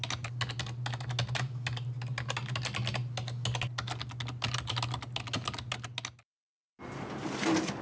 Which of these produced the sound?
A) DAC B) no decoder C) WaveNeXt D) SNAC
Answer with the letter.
B